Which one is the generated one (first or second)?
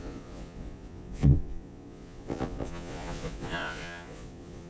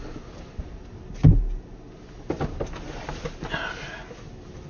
first